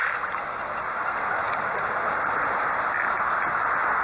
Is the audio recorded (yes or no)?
yes